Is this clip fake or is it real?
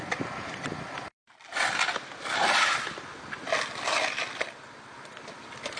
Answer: real